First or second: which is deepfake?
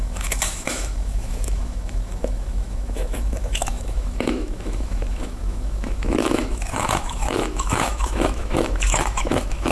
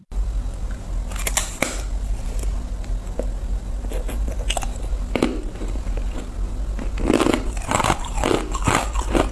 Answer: first